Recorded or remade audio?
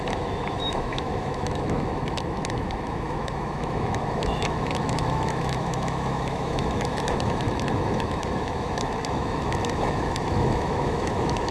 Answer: remade